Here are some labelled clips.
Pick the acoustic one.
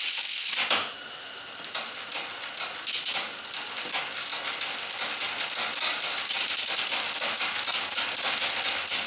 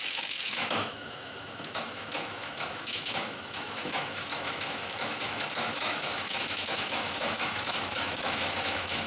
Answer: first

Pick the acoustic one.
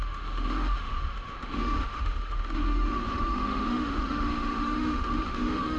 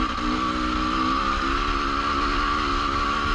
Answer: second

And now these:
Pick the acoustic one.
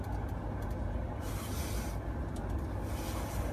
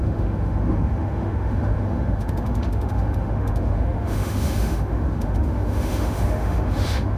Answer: first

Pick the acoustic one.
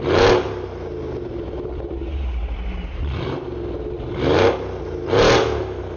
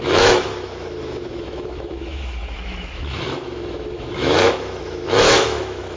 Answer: first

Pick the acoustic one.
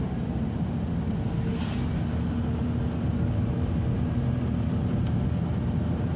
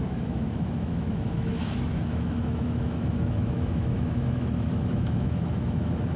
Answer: first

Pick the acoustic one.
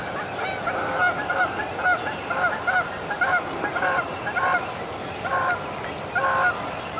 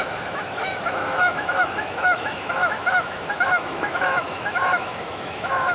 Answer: first